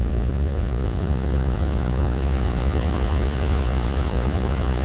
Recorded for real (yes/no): no